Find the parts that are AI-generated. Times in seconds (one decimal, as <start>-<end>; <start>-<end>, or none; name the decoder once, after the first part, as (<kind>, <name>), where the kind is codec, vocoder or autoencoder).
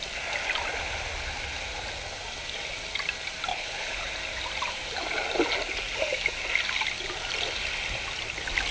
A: 3.5-4.1 (codec, HILCodec)